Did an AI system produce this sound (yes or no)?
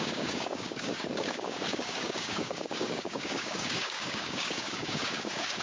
yes